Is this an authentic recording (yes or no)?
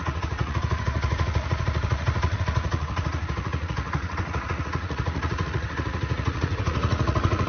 no